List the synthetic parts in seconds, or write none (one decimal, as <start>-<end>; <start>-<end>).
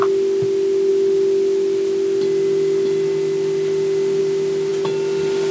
none